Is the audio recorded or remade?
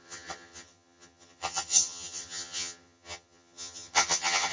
remade